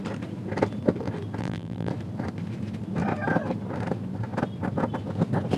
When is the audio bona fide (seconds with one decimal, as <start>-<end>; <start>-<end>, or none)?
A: 0.0-1.4; 1.9-5.6